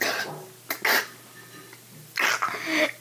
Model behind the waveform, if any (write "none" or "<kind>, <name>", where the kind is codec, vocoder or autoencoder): none